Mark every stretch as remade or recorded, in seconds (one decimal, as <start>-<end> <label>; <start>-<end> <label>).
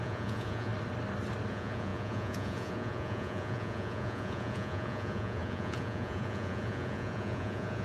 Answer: 0.0-0.7 remade; 0.7-1.5 recorded; 1.5-7.8 remade